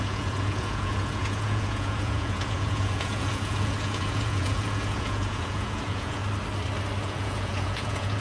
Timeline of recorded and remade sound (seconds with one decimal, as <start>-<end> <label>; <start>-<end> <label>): 0.0-6.2 remade; 6.2-7.0 recorded; 7.0-8.2 remade